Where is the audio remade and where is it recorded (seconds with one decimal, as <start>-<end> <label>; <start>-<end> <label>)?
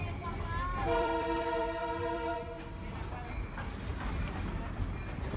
0.0-0.8 recorded; 0.8-3.0 remade; 3.0-3.9 recorded; 3.9-4.8 remade; 4.8-5.4 recorded